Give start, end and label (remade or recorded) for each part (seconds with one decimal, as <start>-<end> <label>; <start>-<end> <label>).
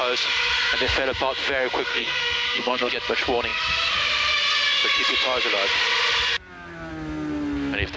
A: 0.0-1.9 recorded; 1.9-2.9 remade; 2.9-8.0 recorded